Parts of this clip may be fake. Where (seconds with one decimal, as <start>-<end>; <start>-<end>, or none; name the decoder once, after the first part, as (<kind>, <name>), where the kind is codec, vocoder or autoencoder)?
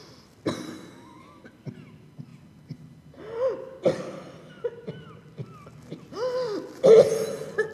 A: none